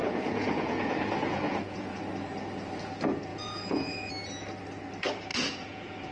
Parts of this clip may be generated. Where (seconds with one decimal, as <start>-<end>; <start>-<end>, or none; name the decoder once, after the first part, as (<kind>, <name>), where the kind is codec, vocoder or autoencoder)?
0.0-2.0 (vocoder, Vocos); 3.3-4.1; 5.3-6.1